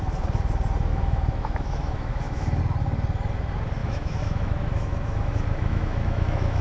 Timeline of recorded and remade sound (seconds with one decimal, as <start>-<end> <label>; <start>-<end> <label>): 0.0-0.9 recorded; 0.9-2.6 remade; 2.6-3.8 recorded; 3.8-6.6 remade